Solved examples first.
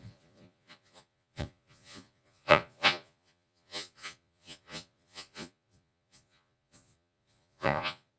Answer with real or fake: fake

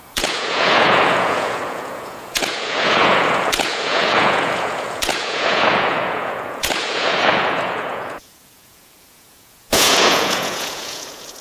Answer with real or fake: fake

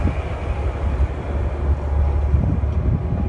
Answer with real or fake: real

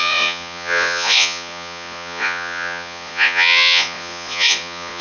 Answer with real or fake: fake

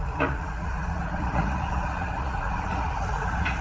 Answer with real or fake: fake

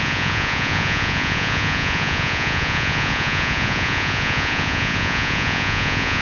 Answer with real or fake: fake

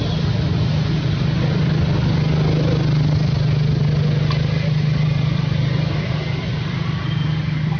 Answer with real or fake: real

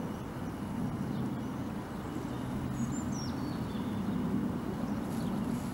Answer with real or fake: real